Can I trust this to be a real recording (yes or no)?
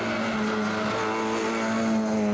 yes